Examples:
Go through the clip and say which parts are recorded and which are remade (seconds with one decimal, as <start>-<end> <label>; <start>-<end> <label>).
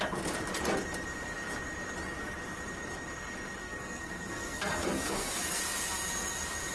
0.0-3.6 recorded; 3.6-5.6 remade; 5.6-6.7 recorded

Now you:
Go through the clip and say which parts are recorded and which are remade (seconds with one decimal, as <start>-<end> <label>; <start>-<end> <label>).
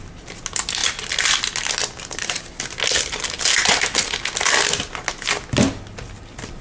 0.0-6.6 recorded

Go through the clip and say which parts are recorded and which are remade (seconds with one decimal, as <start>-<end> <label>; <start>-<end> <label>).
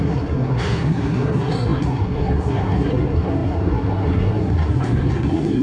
0.0-5.6 remade